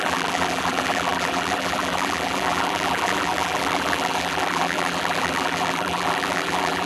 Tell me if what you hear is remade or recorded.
remade